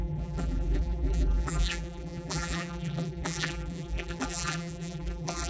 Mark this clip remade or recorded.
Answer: remade